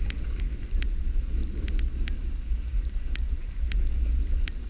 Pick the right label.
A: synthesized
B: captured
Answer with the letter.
B